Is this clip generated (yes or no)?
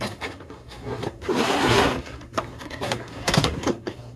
yes